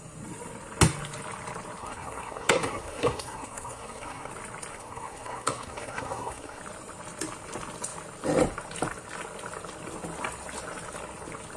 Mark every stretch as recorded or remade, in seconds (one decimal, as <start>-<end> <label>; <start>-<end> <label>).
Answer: 0.0-1.8 recorded; 1.8-4.3 remade; 4.3-4.7 recorded; 4.7-6.6 remade; 6.6-11.6 recorded